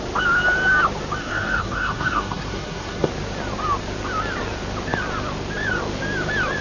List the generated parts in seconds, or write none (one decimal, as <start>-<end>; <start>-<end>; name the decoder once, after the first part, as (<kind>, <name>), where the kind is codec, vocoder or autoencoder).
1.2-3.1 (codec, SNAC)